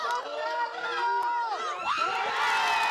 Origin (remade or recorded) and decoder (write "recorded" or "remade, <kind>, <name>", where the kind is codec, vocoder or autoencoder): recorded